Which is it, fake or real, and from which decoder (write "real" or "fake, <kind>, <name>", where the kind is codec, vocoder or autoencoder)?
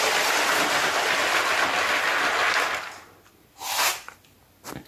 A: real